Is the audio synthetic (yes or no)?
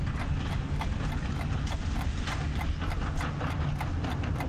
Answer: no